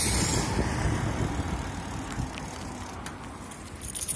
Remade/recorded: recorded